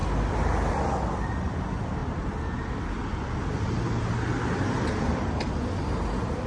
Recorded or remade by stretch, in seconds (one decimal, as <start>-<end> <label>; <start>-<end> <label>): 0.0-6.5 recorded